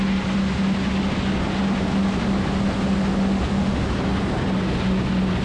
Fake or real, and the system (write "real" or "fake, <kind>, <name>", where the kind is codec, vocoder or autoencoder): real